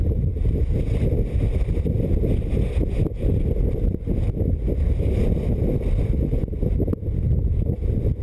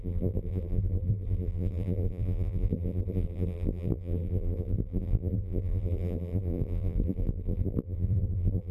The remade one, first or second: second